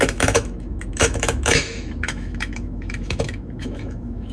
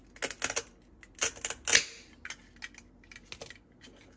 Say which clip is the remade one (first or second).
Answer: first